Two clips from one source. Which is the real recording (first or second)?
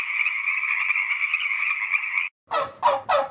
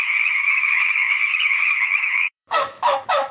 first